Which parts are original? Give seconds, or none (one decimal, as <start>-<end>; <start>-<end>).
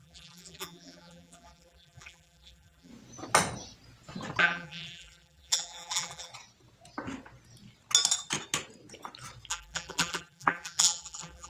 2.9-4.4; 6.3-9.5